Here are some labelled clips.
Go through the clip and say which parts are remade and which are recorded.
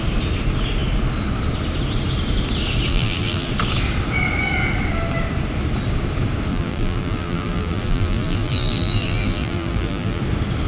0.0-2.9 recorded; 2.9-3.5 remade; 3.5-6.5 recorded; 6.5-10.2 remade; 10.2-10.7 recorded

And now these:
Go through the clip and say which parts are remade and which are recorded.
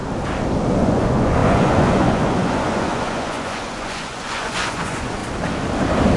0.0-0.8 recorded; 0.8-5.2 remade; 5.2-6.2 recorded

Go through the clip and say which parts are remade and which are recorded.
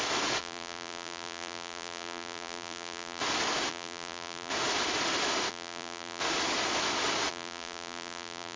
0.0-0.4 recorded; 0.4-3.2 remade; 3.2-3.7 recorded; 3.7-4.5 remade; 4.5-5.5 recorded; 5.5-6.2 remade; 6.2-7.3 recorded; 7.3-8.6 remade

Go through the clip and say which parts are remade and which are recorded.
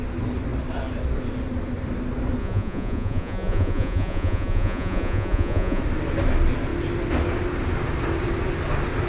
0.0-2.4 recorded; 2.4-5.8 remade; 5.8-9.1 recorded